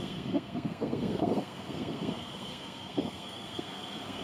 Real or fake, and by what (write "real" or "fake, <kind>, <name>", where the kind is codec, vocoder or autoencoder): fake, codec, SNAC